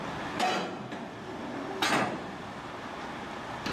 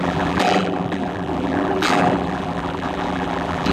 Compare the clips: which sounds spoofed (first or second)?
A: second